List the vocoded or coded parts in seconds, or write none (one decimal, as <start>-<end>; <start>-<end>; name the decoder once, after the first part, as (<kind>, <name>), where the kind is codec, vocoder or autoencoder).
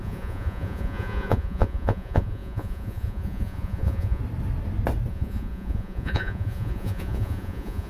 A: 0.0-4.2 (vocoder, Vocos); 5.1-7.9